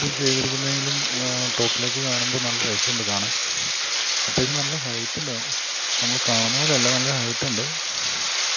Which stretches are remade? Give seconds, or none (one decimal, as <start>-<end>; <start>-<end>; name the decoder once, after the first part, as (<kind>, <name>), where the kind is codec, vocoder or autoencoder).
none